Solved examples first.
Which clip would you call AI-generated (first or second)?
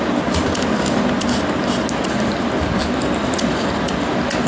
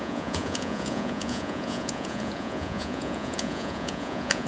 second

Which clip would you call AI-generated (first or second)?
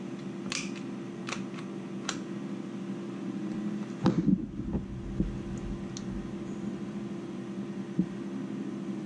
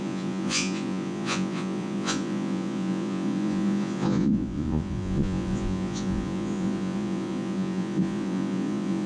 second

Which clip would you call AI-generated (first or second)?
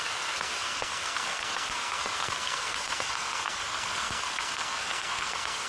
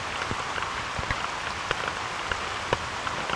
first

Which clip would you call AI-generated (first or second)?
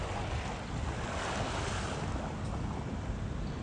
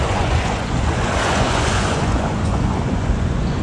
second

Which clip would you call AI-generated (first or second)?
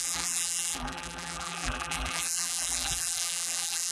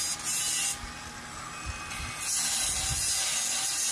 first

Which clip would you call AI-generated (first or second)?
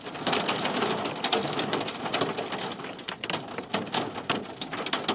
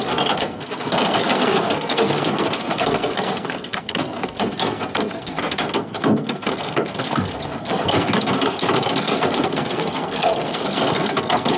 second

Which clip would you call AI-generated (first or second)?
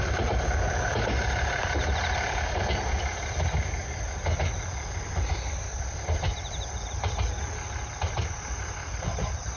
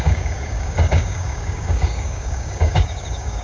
second